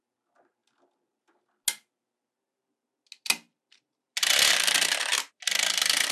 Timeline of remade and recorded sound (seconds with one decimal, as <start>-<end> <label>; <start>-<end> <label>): 0.0-6.1 recorded